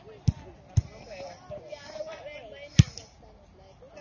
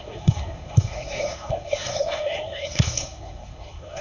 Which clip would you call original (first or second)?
first